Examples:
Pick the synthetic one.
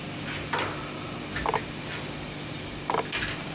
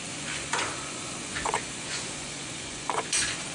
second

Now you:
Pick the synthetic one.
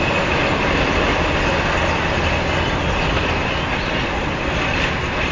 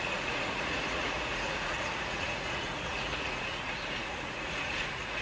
second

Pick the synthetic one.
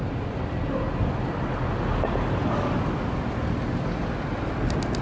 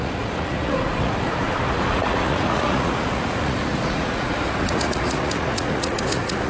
second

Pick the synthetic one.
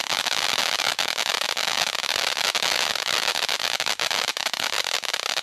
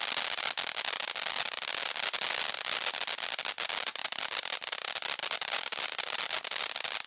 first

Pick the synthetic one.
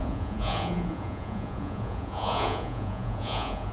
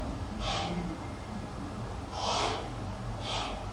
first